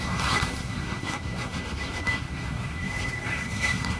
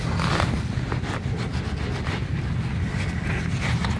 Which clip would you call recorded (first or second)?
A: second